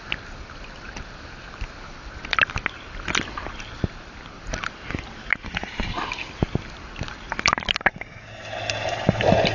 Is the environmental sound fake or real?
real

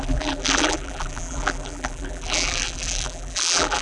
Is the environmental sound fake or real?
fake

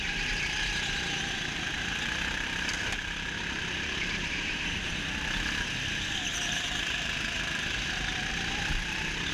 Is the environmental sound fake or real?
fake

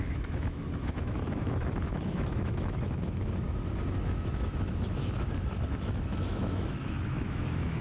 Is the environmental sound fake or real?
fake